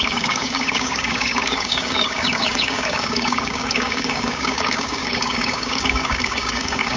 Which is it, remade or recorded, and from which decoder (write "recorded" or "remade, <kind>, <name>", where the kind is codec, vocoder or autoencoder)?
remade, codec, DAC